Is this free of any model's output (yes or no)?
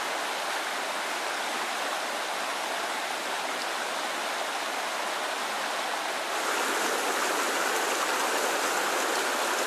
yes